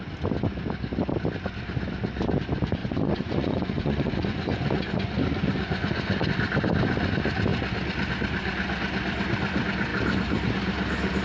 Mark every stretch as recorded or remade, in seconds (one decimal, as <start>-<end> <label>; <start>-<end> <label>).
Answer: 0.0-2.8 recorded; 2.8-6.3 remade; 6.3-11.2 recorded